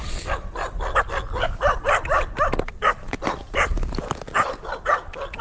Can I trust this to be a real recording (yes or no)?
yes